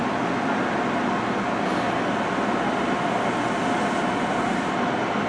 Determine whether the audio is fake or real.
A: real